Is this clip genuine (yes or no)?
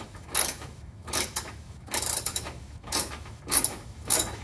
no